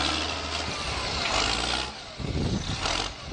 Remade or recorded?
recorded